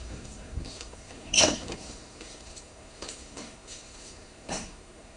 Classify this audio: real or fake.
fake